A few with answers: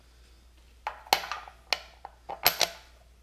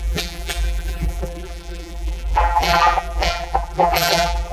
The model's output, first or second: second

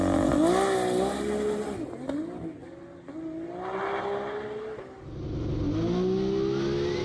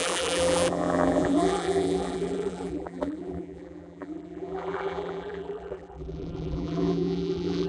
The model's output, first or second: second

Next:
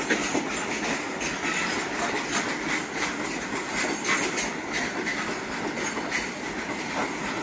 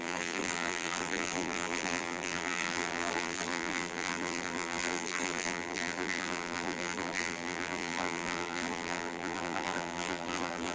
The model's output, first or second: second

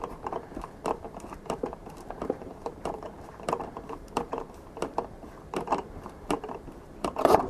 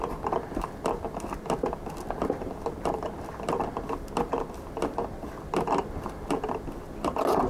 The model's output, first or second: first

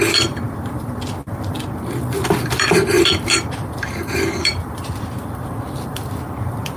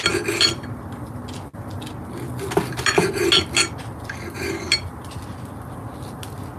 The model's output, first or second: first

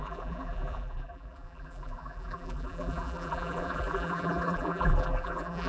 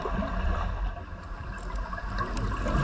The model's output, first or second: first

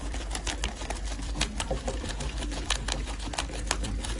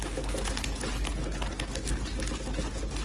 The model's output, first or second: first